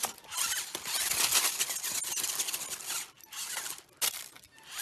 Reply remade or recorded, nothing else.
recorded